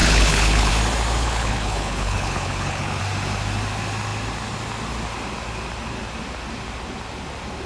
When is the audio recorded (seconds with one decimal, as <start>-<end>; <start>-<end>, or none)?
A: 0.7-1.2; 3.0-7.7